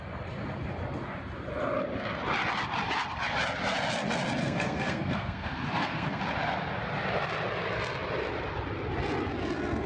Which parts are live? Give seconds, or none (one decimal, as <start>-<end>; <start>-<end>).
0.0-4.4; 6.2-9.9